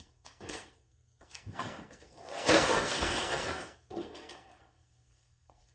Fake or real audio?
fake